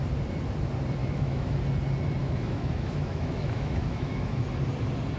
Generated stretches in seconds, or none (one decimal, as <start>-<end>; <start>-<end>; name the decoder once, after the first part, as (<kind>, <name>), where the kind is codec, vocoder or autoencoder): 1.0-1.6 (autoencoder, DAC-VAE); 2.2-4.4